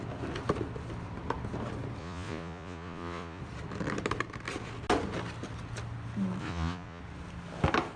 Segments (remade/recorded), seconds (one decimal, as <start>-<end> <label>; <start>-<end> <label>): 0.0-2.0 recorded; 2.0-3.4 remade; 3.4-6.4 recorded; 6.4-7.0 remade; 7.0-8.0 recorded